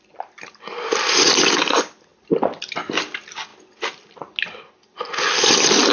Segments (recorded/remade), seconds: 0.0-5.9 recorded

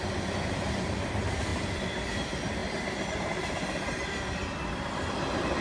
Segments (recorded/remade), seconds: 0.0-5.6 recorded

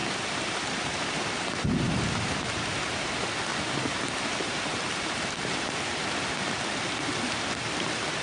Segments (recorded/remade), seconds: 0.0-3.0 remade; 3.0-3.5 recorded; 3.5-6.2 remade; 6.2-8.2 recorded

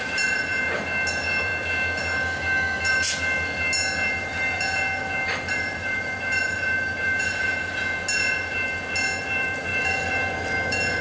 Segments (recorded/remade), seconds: 0.0-0.5 remade; 0.5-1.1 recorded; 1.1-1.5 remade; 1.5-5.5 recorded; 5.5-7.5 remade; 7.5-9.2 recorded; 9.2-11.0 remade

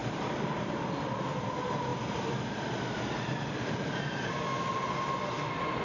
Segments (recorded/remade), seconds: 0.0-0.8 remade; 0.8-1.9 recorded; 1.9-3.0 remade; 3.0-5.8 recorded

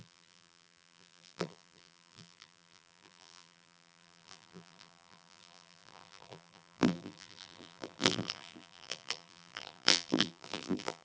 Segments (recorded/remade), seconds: 0.0-11.0 remade

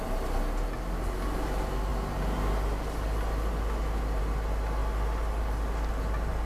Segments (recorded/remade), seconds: 0.0-6.5 recorded

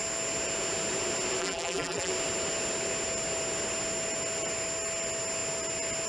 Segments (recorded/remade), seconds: 0.0-1.4 recorded; 1.4-2.1 remade; 2.1-6.1 recorded